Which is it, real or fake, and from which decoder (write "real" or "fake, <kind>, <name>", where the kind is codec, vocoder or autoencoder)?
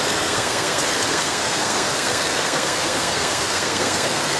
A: fake, codec, SNAC